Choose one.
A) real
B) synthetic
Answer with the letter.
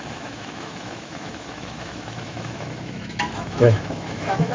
B